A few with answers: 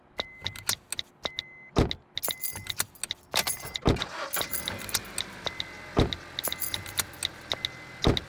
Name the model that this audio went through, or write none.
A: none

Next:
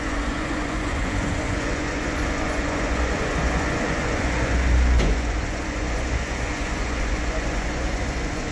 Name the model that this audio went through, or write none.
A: vocoder, Vocos